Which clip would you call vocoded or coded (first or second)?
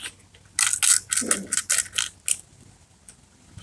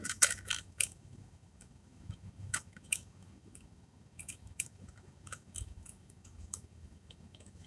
second